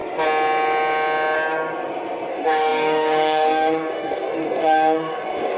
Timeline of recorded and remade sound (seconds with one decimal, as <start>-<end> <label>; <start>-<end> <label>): 0.0-2.3 recorded; 2.3-5.6 remade

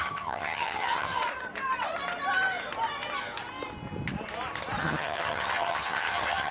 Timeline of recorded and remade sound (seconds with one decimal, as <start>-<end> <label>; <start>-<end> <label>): 0.0-1.2 remade; 1.2-4.8 recorded; 4.8-6.5 remade

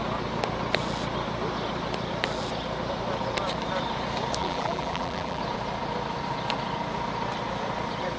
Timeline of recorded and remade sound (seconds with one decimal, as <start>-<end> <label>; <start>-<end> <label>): 0.0-4.4 recorded; 4.4-5.4 remade; 5.4-8.2 recorded

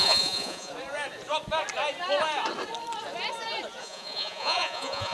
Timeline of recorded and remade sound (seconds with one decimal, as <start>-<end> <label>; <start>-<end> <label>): 0.0-0.7 remade; 0.7-3.8 recorded; 3.8-5.1 remade

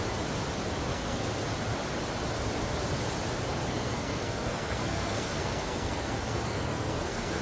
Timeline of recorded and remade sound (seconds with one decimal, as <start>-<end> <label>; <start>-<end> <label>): 0.0-0.9 recorded; 0.9-1.4 remade; 1.4-3.6 recorded; 3.6-7.4 remade

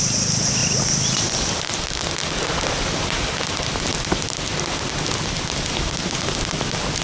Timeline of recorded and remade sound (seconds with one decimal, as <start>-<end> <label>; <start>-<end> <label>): 0.0-7.0 recorded